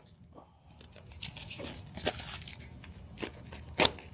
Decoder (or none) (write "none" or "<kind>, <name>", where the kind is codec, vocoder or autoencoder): none